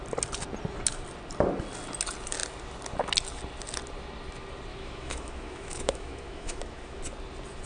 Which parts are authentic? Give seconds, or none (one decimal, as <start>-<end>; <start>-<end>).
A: 0.0-4.7; 7.0-7.7